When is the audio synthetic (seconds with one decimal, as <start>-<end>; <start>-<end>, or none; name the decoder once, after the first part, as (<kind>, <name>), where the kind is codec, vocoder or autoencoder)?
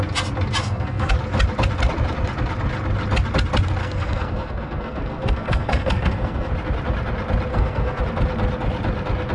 0.6-1.1 (codec, SNAC); 3.8-6.5; 7.5-8.0